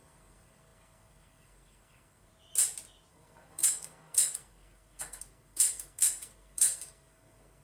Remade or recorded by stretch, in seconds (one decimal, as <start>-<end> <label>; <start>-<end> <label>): 0.0-2.3 remade; 2.3-3.1 recorded; 3.1-7.6 remade